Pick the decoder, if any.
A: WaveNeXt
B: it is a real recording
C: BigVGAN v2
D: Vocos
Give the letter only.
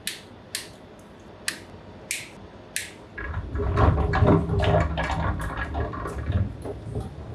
B